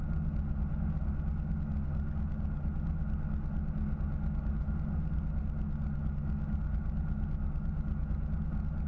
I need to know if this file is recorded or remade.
recorded